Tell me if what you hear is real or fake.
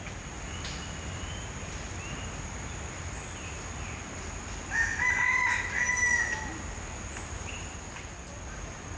real